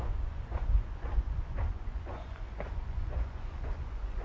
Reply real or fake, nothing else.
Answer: fake